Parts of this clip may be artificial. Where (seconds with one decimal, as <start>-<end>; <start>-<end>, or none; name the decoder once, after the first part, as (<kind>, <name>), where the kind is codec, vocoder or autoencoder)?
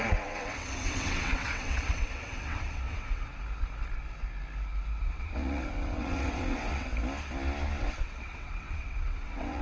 0.0-3.3 (vocoder, WaveNeXt); 5.0-6.9; 7.8-9.6